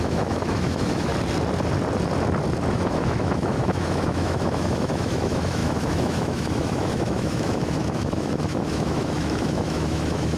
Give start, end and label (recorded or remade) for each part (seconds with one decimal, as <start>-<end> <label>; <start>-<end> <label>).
0.0-1.1 remade; 1.1-2.7 recorded; 2.7-10.4 remade